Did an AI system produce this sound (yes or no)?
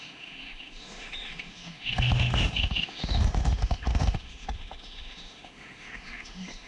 yes